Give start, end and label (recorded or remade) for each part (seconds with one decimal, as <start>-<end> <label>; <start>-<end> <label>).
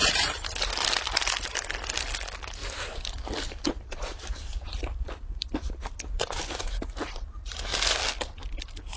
0.0-2.6 recorded; 2.6-6.4 remade; 6.4-9.0 recorded